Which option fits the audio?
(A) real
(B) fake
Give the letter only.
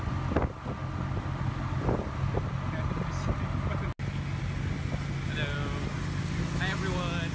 A